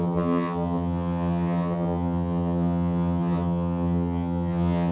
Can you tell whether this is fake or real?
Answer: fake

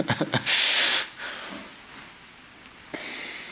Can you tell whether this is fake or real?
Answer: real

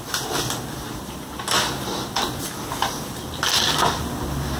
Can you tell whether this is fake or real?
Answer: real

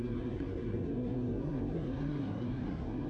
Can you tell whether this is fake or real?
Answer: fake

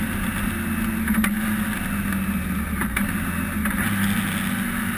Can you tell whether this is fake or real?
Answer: real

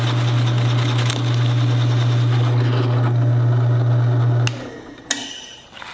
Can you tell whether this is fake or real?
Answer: real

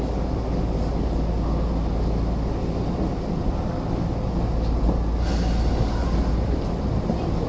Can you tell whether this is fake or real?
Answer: real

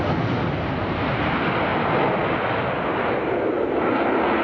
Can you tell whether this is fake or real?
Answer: real